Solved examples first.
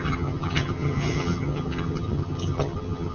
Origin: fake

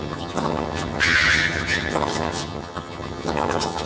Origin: fake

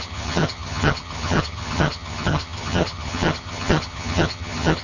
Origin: fake